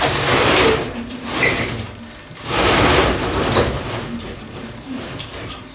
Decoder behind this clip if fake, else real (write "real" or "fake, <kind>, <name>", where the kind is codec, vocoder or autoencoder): fake, vocoder, BigVGAN v2